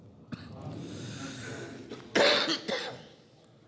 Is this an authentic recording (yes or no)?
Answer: yes